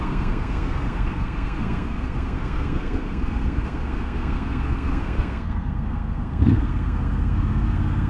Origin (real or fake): fake